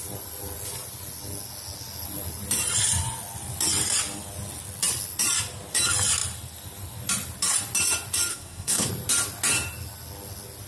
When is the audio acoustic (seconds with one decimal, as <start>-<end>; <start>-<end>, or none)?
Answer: 0.0-8.3; 8.9-10.7